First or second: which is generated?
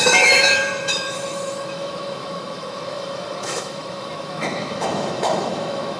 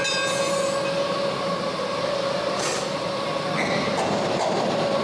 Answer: first